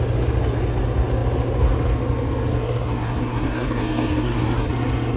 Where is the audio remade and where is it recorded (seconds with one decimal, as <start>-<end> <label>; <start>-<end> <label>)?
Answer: 0.0-2.5 recorded; 2.5-4.7 remade; 4.7-5.2 recorded